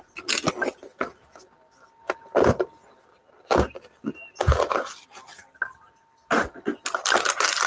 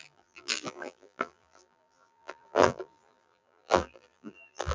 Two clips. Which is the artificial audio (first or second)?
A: second